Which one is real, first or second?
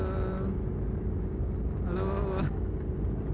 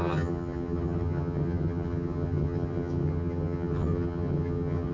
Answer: first